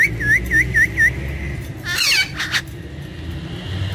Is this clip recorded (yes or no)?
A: yes